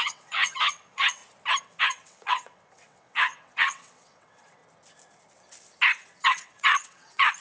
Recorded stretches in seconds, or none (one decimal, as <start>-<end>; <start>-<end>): 1.2-1.8; 4.6-6.2